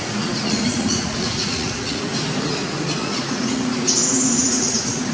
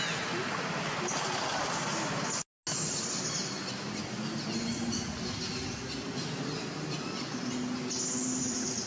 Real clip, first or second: second